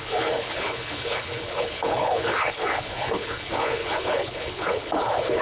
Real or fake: fake